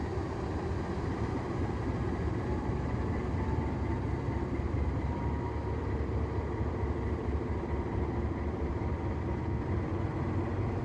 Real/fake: fake